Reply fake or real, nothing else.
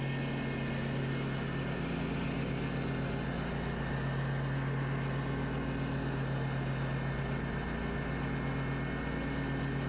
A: real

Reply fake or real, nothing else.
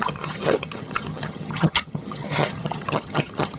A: fake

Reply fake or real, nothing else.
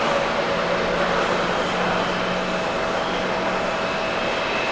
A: real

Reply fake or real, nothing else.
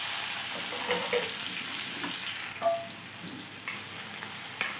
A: real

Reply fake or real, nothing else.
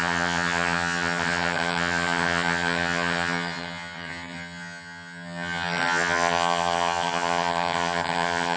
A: fake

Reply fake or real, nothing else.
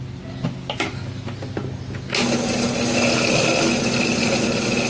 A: real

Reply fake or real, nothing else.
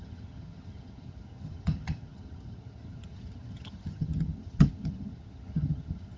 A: fake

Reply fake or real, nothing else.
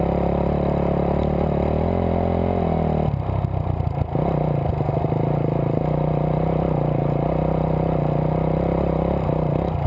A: real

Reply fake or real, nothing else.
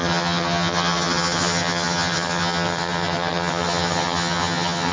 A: fake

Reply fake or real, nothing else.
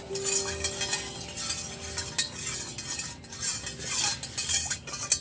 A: real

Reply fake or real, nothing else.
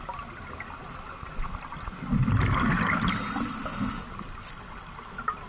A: real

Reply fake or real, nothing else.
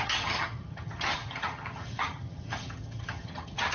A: fake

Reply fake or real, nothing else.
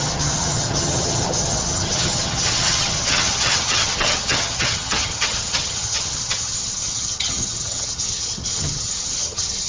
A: fake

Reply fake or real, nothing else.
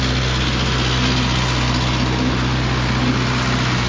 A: real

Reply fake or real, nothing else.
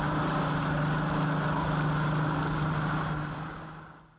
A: real